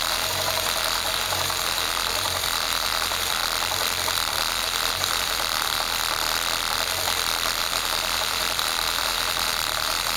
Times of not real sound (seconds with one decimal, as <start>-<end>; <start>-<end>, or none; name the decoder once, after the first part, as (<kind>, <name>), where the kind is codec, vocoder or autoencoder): 0.0-3.4 (vocoder, BigVGAN v2); 4.5-6.0; 7.6-10.2